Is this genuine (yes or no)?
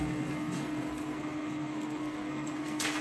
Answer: no